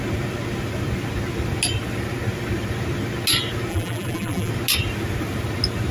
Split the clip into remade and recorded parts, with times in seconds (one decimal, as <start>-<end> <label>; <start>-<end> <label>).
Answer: 0.0-3.7 recorded; 3.7-4.5 remade; 4.5-5.9 recorded